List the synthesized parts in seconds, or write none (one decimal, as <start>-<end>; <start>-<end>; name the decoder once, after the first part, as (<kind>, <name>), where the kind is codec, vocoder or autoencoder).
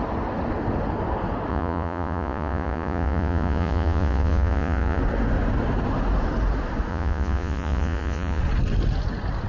1.5-5.0 (vocoder, Vocos); 6.9-8.4